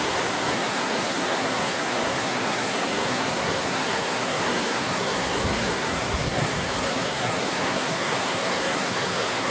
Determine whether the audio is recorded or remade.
remade